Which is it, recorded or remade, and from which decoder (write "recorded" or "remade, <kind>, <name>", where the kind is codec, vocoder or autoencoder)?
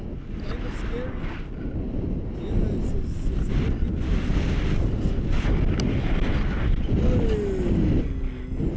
recorded